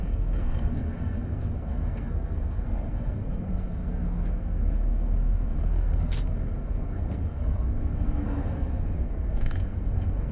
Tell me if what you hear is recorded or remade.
remade